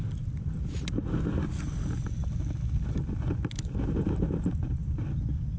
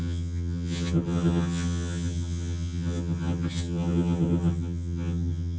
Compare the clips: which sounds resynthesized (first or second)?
second